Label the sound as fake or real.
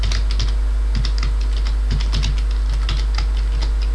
real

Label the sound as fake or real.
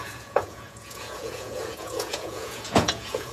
fake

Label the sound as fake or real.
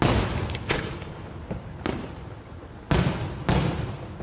real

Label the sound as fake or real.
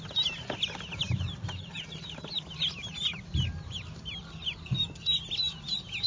real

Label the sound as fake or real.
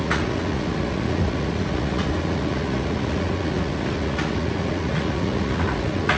fake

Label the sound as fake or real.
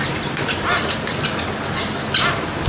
real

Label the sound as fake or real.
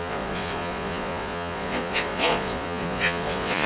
fake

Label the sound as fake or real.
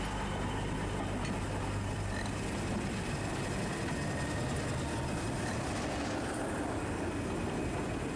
real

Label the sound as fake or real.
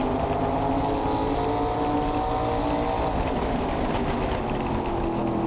real